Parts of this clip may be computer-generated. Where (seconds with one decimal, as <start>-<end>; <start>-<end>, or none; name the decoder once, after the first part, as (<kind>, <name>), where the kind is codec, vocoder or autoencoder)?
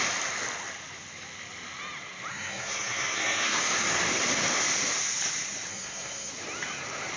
2.3-3.6 (codec, SNAC); 5.7-6.3